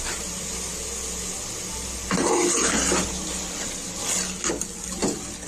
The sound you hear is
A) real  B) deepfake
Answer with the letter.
A